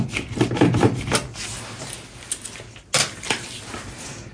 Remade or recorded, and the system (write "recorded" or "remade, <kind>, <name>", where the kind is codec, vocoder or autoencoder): recorded